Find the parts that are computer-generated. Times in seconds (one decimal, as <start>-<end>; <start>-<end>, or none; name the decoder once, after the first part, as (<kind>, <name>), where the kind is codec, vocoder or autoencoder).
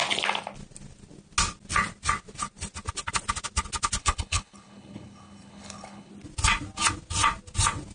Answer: 4.0-6.1 (codec, HILCodec)